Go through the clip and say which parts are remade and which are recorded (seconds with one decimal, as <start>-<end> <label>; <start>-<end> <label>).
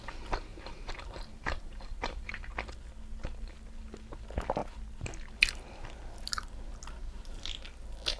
0.0-0.5 recorded; 0.5-2.5 remade; 2.5-8.2 recorded